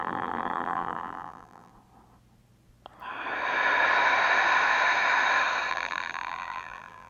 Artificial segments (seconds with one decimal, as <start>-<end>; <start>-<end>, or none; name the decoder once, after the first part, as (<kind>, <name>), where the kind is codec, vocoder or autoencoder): 0.0-1.7 (vocoder, BigVGAN v2); 5.7-7.1